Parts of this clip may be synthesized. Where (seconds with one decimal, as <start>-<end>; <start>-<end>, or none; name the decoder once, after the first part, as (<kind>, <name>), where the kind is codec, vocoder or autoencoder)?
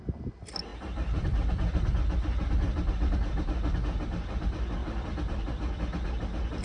0.7-2.9 (vocoder, BigVGAN v2); 4.8-6.1